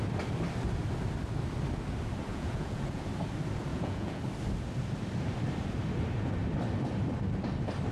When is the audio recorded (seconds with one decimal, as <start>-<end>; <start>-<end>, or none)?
0.0-2.3; 3.0-3.7; 4.2-7.9